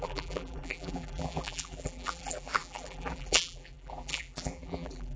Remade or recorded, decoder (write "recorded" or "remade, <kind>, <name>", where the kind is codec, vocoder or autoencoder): remade, vocoder, BigVGAN v2